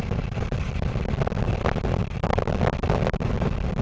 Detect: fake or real real